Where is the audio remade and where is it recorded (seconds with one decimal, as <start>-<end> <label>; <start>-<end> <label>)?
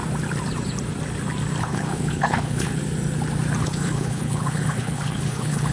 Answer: 0.0-1.6 recorded; 1.6-2.8 remade; 2.8-3.6 recorded; 3.6-5.7 remade